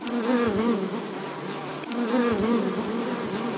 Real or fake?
real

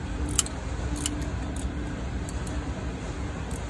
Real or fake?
real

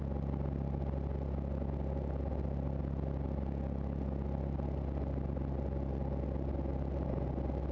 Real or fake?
real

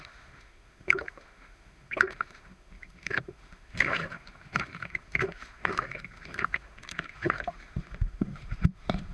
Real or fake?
fake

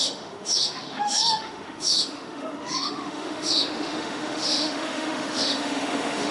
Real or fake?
fake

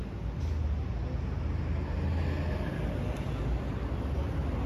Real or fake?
real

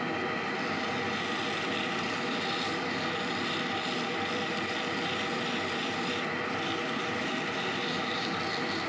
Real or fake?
real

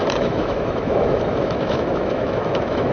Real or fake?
fake